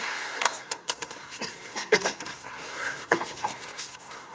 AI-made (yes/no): yes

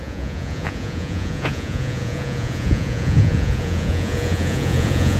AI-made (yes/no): yes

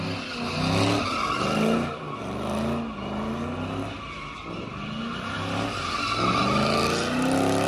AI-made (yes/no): no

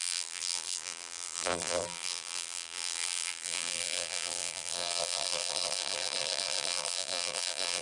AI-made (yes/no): yes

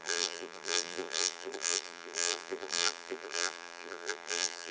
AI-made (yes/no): yes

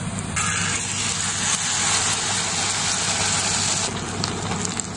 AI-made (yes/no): no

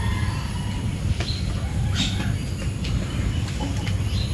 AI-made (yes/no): no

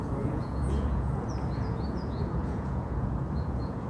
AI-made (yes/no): yes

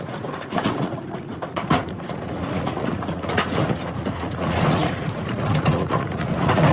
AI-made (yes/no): yes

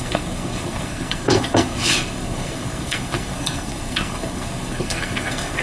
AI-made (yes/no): yes